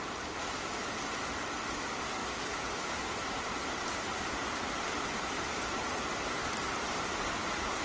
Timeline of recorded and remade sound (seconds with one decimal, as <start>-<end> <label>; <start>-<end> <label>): 0.0-2.2 recorded; 2.2-6.3 remade; 6.3-7.8 recorded